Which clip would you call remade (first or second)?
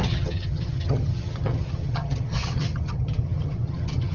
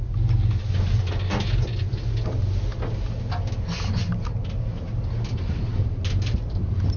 first